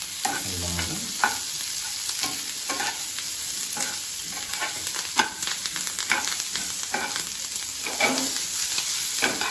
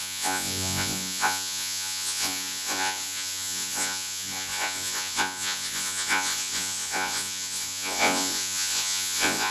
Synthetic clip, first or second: second